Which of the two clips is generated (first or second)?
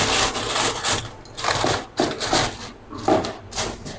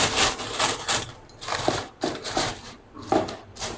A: second